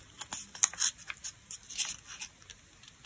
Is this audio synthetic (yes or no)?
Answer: no